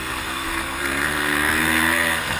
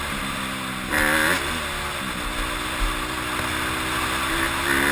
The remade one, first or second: first